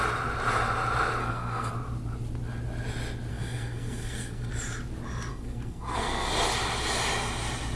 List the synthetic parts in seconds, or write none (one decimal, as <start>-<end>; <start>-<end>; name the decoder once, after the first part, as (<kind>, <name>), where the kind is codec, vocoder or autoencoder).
1.2-1.7 (codec, SNAC); 3.3-4.5; 5.3-6.3